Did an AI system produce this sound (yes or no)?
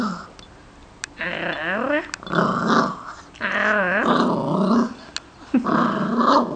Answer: no